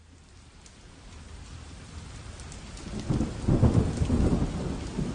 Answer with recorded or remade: recorded